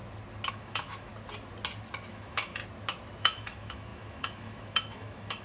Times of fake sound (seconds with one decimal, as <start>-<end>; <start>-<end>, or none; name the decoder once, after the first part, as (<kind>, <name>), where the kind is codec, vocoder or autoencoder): 0.5-1.1 (autoencoder, DAC-VAE); 2.1-2.6; 3.2-5.4